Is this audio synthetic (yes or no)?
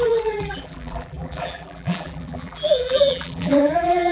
yes